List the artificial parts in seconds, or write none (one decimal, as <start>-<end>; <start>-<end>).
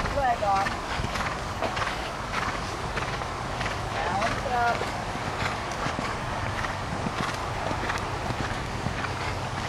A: 0.0-7.4; 8.4-9.7